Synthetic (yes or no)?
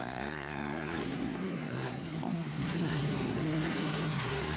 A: yes